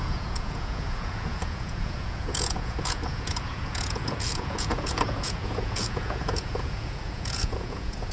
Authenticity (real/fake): fake